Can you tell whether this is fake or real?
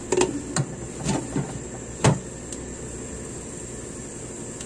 real